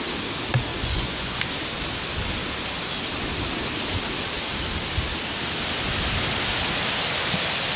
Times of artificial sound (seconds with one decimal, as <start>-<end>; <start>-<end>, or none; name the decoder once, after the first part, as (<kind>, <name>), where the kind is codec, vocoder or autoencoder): 0.7-1.4 (vocoder, Vocos)

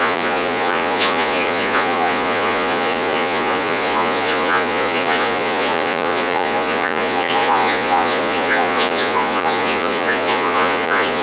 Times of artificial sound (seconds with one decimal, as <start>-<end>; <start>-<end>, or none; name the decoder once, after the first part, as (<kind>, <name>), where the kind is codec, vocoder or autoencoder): 0.0-11.2 (vocoder, Vocos)

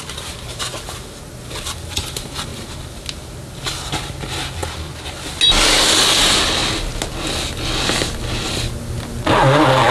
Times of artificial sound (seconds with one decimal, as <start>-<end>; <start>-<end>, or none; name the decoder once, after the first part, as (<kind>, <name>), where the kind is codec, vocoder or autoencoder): none